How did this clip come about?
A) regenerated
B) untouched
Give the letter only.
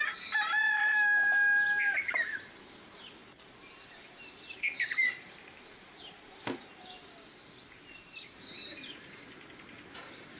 A